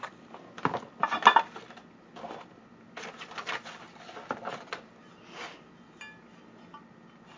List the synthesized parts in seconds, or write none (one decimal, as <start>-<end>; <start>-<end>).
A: none